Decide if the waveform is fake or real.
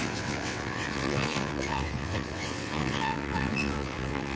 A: fake